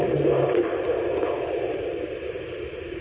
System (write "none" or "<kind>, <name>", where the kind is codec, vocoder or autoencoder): vocoder, BigVGAN v2